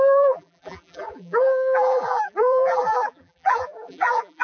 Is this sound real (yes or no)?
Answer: no